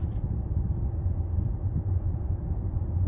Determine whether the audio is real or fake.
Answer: real